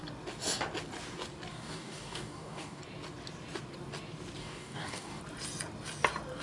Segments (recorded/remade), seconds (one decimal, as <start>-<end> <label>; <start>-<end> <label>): 0.0-1.5 recorded; 1.5-2.8 remade; 2.8-4.4 recorded; 4.4-5.2 remade; 5.2-6.4 recorded